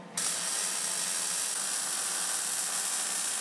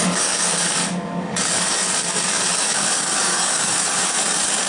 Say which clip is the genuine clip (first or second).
first